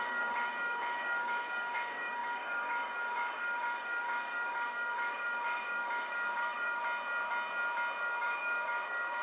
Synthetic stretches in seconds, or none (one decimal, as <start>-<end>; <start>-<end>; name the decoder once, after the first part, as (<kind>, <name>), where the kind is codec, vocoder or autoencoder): 0.0-6.8 (codec, DAC); 8.0-9.2